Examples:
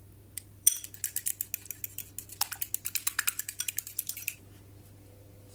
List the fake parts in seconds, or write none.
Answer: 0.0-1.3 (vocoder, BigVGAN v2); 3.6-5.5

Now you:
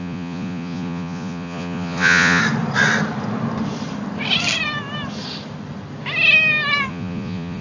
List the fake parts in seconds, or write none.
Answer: 0.0-2.4 (vocoder, Vocos); 6.9-7.6

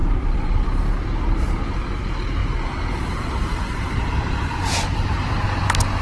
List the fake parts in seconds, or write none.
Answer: 0.0-0.8 (vocoder, BigVGAN v2); 2.4-5.3

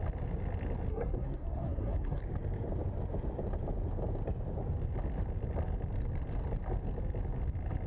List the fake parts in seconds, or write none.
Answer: 0.9-2.2 (codec, SNAC)

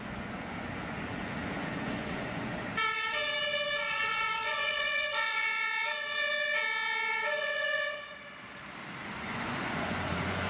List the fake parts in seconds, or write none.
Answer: 0.0-2.7 (vocoder, Vocos); 3.9-5.6; 7.4-8.2; 9.1-10.5

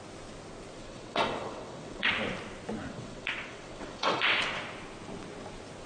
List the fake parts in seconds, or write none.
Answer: 0.8-2.1 (vocoder, WaveNeXt); 2.8-4.4